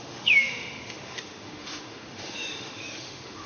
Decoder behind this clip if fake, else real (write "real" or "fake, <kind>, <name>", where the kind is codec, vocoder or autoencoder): fake, autoencoder, DAC-VAE